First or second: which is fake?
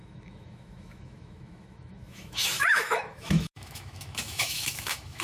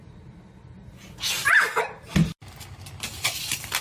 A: first